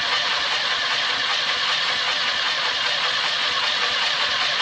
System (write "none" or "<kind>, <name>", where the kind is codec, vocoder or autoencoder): vocoder, Vocos